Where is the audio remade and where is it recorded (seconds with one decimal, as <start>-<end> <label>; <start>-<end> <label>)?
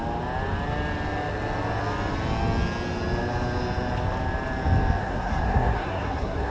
0.0-5.0 recorded; 5.0-6.5 remade